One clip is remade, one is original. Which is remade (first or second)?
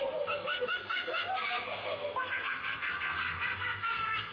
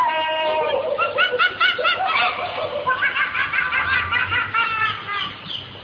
first